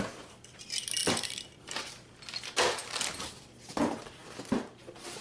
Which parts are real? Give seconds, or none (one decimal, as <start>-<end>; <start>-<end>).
0.0-1.0; 1.8-5.2